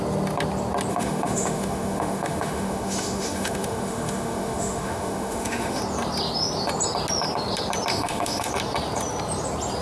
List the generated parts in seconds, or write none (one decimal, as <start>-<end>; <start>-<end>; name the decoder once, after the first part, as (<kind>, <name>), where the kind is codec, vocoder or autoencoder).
0.9-5.8 (autoencoder, DAC-VAE); 7.9-8.5